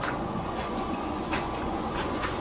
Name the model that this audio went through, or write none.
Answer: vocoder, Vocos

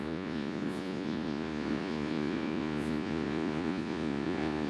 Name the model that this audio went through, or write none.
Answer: vocoder, Vocos